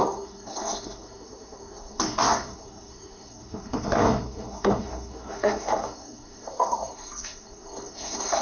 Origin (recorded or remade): remade